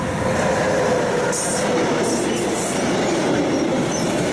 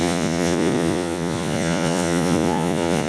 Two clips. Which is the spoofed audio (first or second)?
second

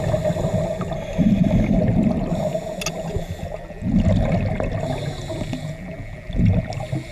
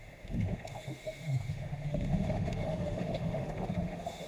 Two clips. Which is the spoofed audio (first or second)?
second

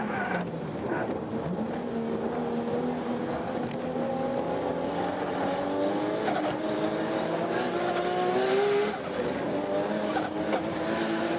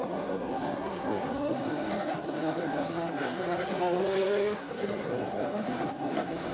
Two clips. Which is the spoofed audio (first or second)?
second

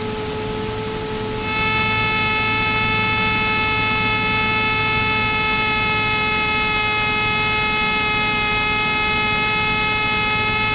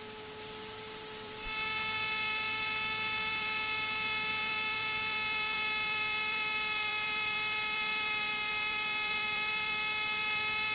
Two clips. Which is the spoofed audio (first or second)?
second